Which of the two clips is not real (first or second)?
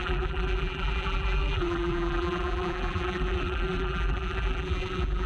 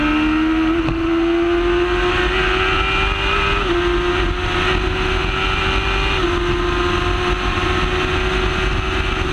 first